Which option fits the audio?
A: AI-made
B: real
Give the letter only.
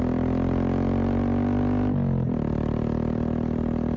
B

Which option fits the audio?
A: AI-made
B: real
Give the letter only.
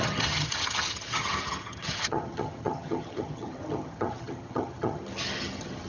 A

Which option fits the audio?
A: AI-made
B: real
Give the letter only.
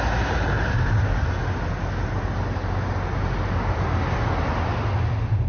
B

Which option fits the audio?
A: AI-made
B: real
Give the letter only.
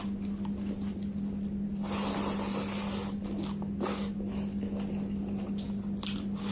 B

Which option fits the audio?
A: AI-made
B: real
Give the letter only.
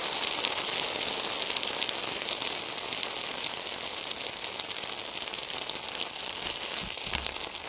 B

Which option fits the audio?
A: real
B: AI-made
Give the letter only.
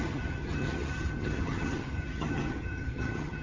B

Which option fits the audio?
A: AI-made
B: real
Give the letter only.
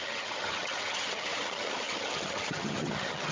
A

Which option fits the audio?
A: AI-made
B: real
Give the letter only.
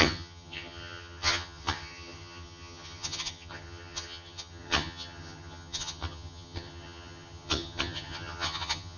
A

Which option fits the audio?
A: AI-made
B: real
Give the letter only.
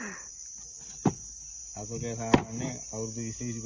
B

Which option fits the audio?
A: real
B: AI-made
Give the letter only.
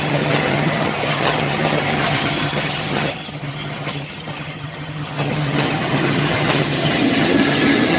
B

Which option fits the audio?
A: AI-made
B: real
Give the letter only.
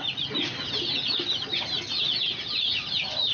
B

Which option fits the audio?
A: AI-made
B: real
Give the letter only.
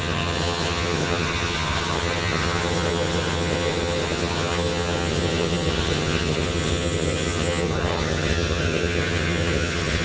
A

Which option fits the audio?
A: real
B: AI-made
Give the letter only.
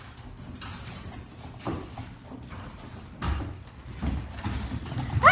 A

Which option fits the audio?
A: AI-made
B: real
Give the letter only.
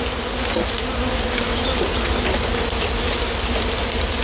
B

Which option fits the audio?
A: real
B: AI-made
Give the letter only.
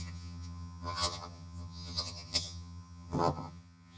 B